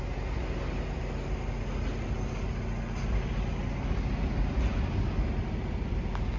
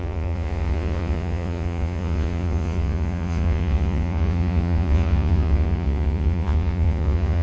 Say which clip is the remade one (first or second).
second